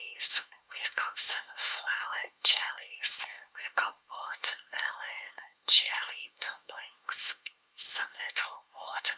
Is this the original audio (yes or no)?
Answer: no